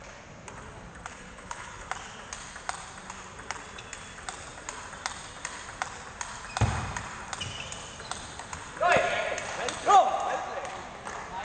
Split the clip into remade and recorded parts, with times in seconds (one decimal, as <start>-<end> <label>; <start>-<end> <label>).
0.0-1.1 recorded; 1.1-1.9 remade; 1.9-11.4 recorded